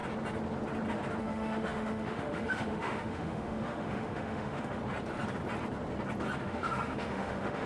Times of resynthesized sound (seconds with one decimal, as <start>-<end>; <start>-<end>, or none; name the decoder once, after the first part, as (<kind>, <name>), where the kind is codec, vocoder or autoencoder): 1.2-4.8 (autoencoder, DAC-VAE); 6.4-7.7